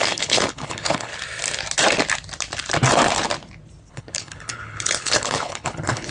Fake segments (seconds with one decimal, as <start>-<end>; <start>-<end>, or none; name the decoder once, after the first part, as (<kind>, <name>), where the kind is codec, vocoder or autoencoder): 0.0-1.1 (codec, HILCodec); 3.9-6.1